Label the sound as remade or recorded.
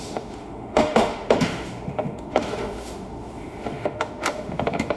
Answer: remade